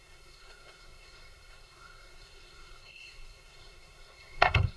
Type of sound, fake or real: fake